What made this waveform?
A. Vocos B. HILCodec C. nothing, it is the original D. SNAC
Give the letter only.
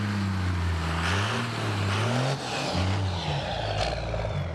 C